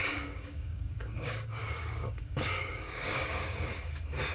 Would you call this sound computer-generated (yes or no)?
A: yes